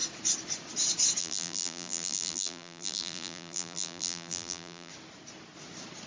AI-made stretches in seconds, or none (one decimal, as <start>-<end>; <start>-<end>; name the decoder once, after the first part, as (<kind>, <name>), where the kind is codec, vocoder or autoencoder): 1.2-4.9 (vocoder, BigVGAN v2)